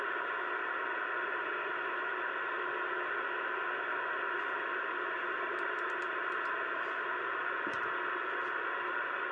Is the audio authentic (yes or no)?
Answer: yes